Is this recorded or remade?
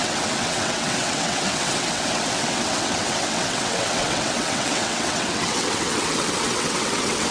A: remade